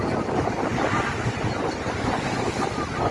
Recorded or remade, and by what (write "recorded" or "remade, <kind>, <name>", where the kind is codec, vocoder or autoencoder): recorded